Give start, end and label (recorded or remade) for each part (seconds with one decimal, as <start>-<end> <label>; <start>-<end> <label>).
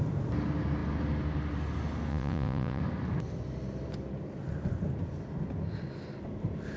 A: 0.0-2.1 recorded; 2.1-2.8 remade; 2.8-6.8 recorded